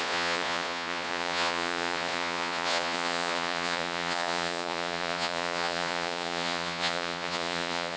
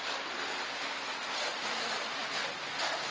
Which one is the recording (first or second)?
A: second